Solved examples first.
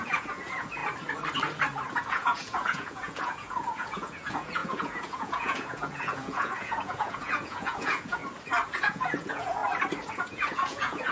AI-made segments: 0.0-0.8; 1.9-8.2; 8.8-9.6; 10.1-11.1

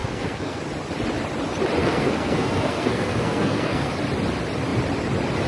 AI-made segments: 0.0-0.6; 1.8-3.9

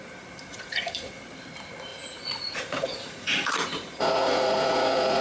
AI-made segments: 0.5-1.1; 1.9-5.2

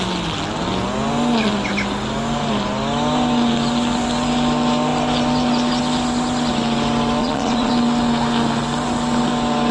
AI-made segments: 7.2-7.7

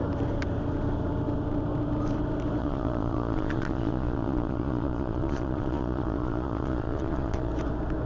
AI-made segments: 2.6-7.5

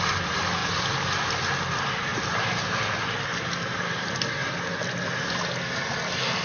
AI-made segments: none

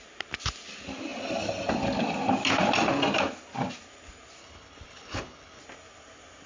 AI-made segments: 4.4-5.6